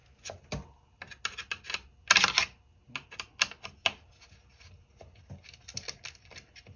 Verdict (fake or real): real